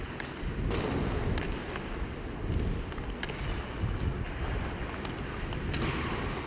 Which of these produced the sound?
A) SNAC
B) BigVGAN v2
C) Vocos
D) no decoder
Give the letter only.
D